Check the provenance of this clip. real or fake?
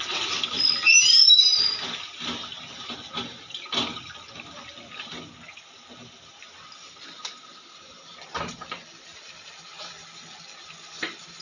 real